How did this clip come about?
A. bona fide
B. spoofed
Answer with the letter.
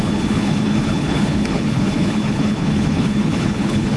B